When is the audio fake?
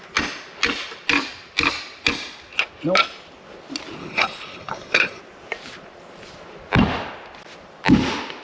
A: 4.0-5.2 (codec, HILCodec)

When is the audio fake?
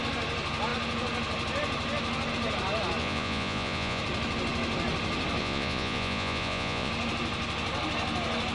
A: 3.0-4.0 (vocoder, Vocos); 5.4-6.9